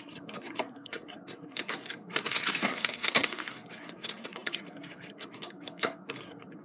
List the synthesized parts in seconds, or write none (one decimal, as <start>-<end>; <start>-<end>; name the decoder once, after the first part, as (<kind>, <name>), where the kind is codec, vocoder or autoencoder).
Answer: 0.0-6.6 (codec, SNAC)